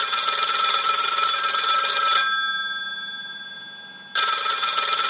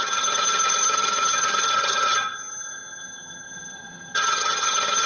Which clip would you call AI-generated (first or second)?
second